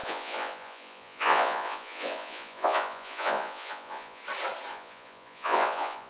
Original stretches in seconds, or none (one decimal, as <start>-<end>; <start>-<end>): 4.2-4.7